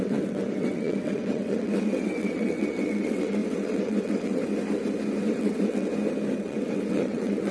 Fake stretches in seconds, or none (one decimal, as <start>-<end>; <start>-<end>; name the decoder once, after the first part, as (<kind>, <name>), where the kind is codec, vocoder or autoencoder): 0.0-4.4 (vocoder, WaveNeXt); 5.2-5.9; 6.4-7.5